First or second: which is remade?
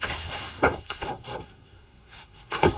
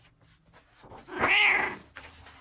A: first